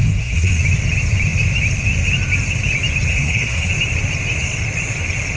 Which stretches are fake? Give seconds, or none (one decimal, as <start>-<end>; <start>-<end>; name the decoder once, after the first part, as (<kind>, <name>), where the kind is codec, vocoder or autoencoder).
0.0-0.6 (codec, SNAC); 3.1-3.7

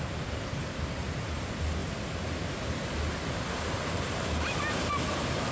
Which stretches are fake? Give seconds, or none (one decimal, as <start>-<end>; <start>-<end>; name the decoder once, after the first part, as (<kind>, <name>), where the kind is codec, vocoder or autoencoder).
none

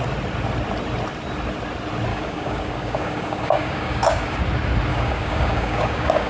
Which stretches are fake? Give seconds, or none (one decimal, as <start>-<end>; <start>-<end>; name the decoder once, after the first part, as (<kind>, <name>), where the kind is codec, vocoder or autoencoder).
2.1-4.4 (codec, DAC); 4.9-6.3

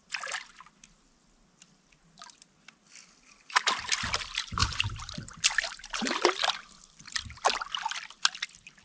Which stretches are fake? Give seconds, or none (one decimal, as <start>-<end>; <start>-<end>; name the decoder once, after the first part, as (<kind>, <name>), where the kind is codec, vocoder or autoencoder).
4.6-8.1 (vocoder, BigVGAN v2)